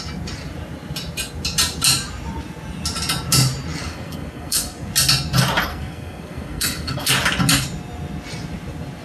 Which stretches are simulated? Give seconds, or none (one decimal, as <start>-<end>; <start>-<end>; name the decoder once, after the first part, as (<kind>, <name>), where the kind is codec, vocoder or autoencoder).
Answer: 3.8-4.9 (codec, SNAC); 5.7-7.1